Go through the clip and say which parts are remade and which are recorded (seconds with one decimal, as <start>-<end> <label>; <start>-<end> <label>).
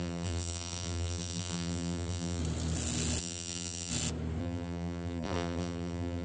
0.0-2.4 remade; 2.4-3.2 recorded; 3.2-3.9 remade; 3.9-4.4 recorded; 4.4-6.2 remade